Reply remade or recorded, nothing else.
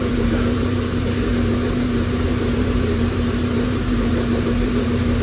remade